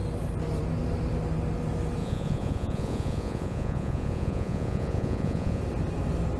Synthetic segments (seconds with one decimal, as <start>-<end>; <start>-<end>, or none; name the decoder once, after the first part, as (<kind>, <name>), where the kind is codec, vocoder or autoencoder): 2.0-5.6 (vocoder, Vocos)